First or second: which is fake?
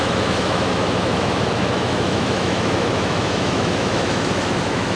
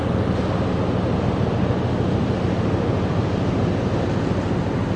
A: first